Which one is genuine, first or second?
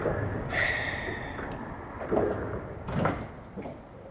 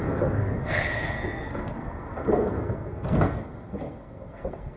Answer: first